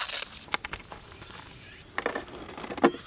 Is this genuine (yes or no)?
yes